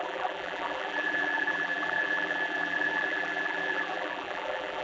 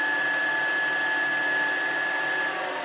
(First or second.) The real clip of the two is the second